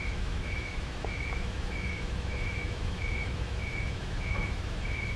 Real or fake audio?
fake